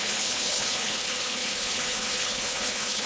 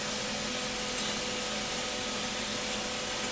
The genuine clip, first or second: second